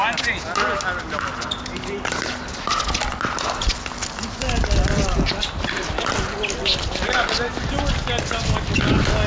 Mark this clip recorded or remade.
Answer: recorded